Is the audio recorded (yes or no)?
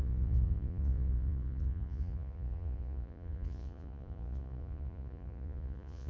no